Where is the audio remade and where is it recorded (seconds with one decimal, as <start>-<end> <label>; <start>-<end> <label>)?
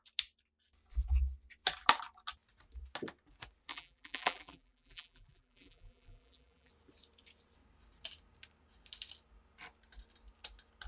0.0-3.7 recorded; 3.7-6.7 remade; 6.7-10.9 recorded